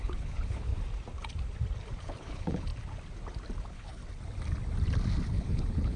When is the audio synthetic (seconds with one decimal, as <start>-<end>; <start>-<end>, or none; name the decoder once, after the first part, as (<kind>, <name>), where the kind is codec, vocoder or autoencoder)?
0.0-0.7 (codec, HILCodec); 2.0-2.7; 3.6-4.0; 5.3-6.0